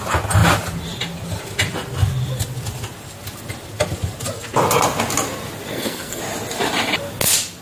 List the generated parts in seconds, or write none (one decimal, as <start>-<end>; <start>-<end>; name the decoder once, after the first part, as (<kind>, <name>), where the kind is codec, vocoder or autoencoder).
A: 5.7-6.2 (codec, SNAC)